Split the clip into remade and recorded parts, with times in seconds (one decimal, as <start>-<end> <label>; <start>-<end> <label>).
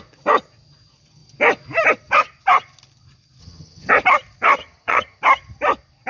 0.0-3.4 recorded; 3.4-3.9 remade; 3.9-4.6 recorded; 4.6-5.2 remade; 5.2-6.1 recorded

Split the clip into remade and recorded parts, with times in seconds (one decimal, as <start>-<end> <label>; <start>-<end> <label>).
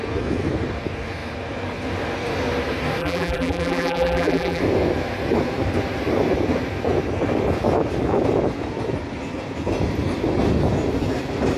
0.0-3.0 recorded; 3.0-4.6 remade; 4.6-11.6 recorded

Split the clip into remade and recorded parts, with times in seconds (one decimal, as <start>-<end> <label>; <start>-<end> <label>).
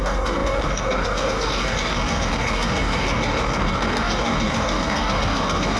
0.0-5.8 remade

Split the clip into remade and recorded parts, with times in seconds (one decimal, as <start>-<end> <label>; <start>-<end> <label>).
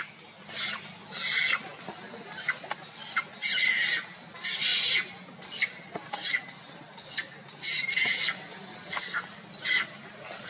0.0-10.5 recorded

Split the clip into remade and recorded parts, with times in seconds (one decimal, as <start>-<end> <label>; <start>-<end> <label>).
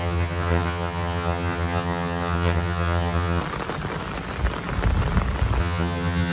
0.0-3.4 remade; 3.4-5.6 recorded; 5.6-6.3 remade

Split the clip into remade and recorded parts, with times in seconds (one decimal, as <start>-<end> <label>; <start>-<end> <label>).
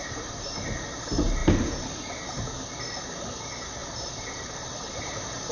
0.0-1.4 recorded; 1.4-2.4 remade; 2.4-3.8 recorded; 3.8-5.5 remade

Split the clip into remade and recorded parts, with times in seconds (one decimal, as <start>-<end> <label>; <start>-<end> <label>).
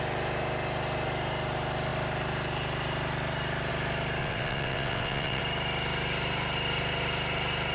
0.0-4.2 recorded; 4.2-5.4 remade; 5.4-7.7 recorded